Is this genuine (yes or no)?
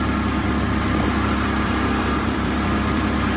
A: no